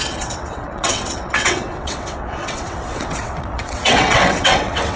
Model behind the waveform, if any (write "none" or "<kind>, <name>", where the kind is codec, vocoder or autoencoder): vocoder, WaveNeXt